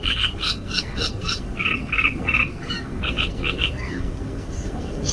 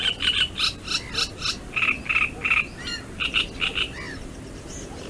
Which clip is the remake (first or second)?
first